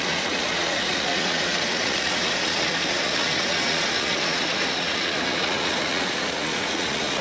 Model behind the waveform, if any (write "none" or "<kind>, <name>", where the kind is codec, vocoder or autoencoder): vocoder, Vocos